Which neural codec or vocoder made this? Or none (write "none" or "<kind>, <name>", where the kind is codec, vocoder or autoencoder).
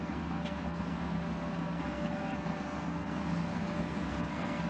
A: codec, SNAC